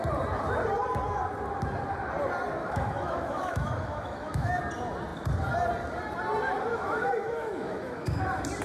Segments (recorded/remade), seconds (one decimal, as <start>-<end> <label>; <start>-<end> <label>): 0.0-2.6 recorded; 2.6-4.6 remade; 4.6-6.7 recorded; 6.7-8.2 remade; 8.2-8.6 recorded